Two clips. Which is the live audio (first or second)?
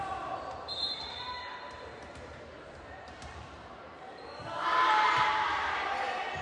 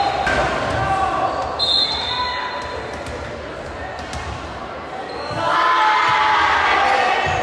second